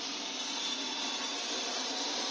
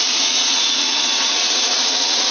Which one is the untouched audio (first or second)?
first